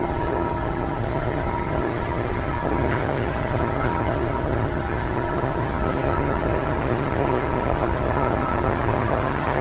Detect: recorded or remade remade